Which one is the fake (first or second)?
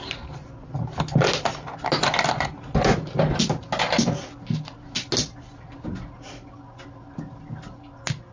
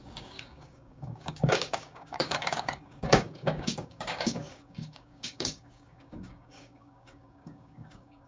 second